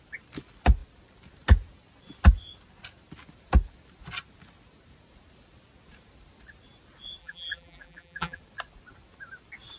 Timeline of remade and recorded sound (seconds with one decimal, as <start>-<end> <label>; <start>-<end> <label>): 0.0-7.2 recorded; 7.2-8.4 remade; 8.4-9.8 recorded